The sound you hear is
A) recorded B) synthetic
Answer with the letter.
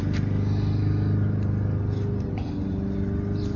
A